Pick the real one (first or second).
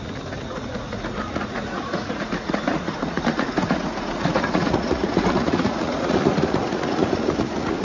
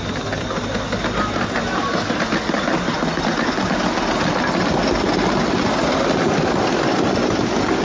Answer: second